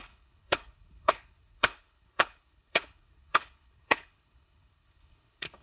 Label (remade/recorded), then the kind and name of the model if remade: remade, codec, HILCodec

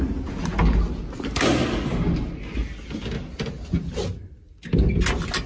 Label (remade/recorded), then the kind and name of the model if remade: recorded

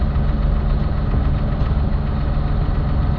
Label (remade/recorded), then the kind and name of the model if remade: recorded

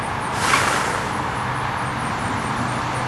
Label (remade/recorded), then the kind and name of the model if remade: recorded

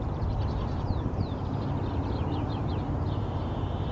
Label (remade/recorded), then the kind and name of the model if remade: recorded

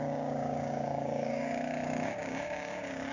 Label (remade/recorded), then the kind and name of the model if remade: remade, codec, DAC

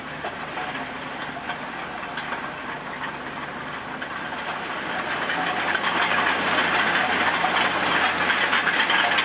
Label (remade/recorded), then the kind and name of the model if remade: recorded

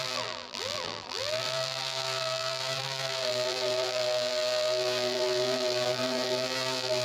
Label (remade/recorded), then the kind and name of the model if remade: remade, vocoder, BigVGAN v2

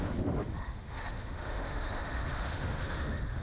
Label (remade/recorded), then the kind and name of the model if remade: remade, autoencoder, DAC-VAE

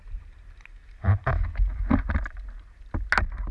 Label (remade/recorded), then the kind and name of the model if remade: recorded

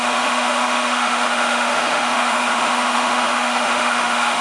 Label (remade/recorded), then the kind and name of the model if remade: remade, autoencoder, DAC-VAE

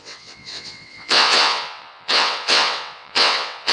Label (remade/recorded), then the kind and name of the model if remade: remade, vocoder, WaveNeXt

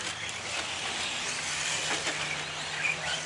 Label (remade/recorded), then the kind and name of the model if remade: recorded